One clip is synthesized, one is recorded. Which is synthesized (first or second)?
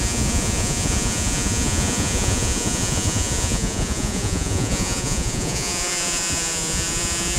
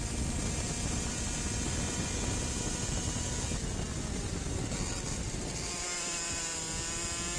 first